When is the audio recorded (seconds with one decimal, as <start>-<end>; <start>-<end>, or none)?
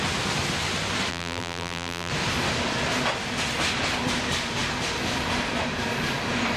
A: 0.0-1.1; 2.1-6.6